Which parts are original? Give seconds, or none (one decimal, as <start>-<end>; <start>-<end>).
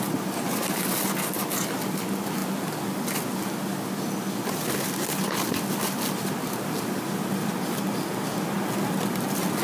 0.0-9.6